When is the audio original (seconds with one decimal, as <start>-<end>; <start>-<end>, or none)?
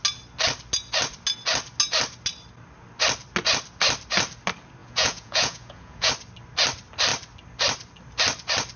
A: 0.0-4.8; 6.1-8.8